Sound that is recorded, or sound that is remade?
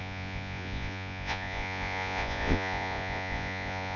remade